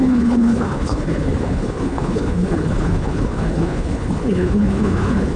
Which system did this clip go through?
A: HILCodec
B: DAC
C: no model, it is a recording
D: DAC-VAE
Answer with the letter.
A